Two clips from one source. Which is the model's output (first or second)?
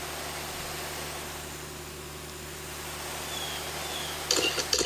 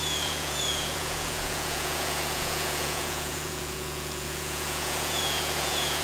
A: second